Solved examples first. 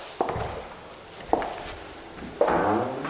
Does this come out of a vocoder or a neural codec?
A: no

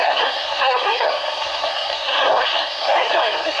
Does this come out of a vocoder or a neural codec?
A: yes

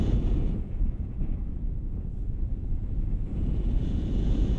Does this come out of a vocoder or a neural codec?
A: yes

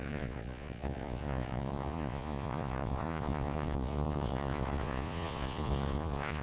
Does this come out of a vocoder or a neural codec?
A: yes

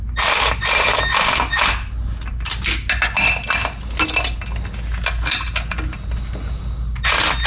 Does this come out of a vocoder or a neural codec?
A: no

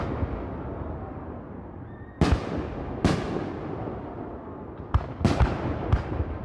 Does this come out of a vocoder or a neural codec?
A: no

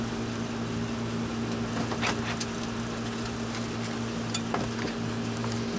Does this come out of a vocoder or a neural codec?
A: no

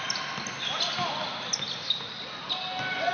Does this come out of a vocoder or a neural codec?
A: no